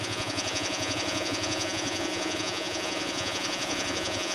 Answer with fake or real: fake